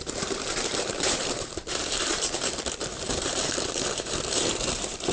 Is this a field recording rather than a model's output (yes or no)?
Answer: no